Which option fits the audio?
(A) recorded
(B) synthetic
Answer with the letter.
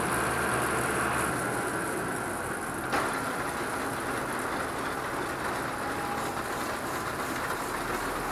A